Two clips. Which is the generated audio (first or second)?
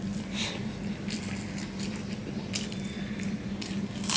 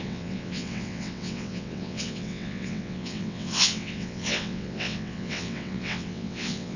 second